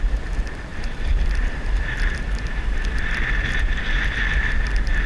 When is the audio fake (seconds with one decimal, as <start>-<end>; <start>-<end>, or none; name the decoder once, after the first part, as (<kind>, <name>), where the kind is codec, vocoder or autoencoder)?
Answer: 0.7-3.8 (vocoder, BigVGAN v2)